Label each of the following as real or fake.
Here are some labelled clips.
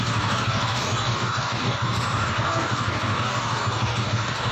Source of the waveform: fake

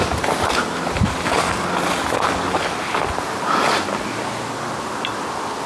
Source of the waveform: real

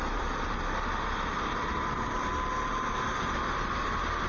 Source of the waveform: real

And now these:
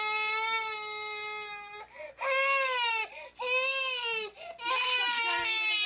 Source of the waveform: real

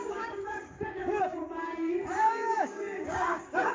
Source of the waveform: fake